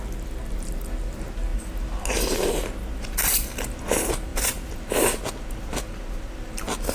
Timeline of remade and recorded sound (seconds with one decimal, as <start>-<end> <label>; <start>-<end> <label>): 0.0-6.9 recorded